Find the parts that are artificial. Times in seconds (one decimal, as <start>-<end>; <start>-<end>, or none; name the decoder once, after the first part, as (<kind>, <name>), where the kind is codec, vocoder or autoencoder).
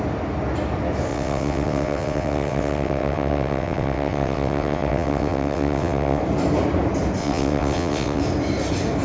1.1-6.2 (vocoder, WaveNeXt); 7.2-8.2